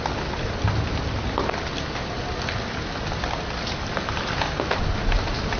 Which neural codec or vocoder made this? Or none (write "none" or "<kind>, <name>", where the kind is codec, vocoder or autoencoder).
none